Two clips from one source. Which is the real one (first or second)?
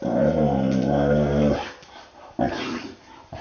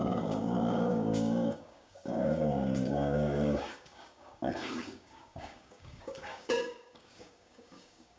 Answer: first